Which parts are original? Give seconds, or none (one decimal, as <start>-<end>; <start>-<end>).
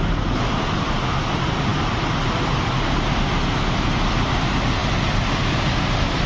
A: 0.0-6.3